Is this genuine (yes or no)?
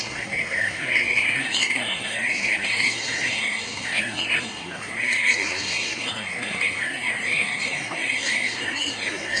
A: no